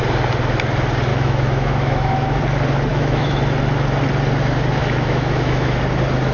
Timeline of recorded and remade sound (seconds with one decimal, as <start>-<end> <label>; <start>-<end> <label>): 0.0-1.1 recorded; 1.1-2.4 remade; 2.4-2.9 recorded; 2.9-3.4 remade; 3.4-4.8 recorded; 4.8-5.8 remade; 5.8-6.3 recorded